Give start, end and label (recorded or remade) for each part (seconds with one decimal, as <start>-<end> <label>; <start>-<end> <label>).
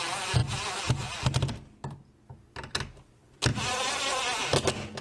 0.0-5.0 recorded